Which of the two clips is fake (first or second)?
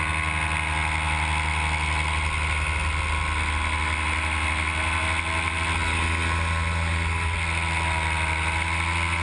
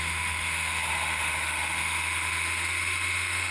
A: second